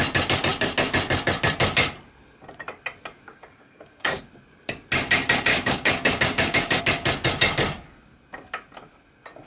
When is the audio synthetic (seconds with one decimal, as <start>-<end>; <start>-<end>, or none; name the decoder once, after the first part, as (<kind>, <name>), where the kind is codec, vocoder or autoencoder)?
3.3-4.2 (codec, DAC); 5.5-6.8